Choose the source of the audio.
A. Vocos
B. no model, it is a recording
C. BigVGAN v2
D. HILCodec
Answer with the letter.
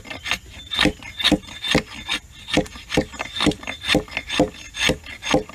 B